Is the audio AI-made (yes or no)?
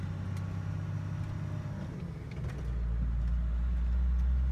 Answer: no